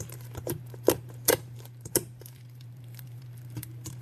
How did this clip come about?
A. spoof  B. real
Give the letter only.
A